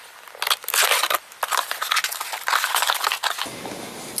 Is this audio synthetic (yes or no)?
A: no